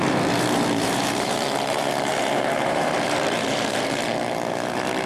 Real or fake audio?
fake